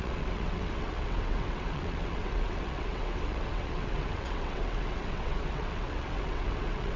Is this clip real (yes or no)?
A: no